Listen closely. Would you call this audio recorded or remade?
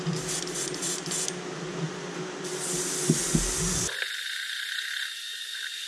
recorded